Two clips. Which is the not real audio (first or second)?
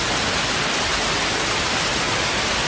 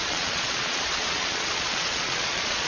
second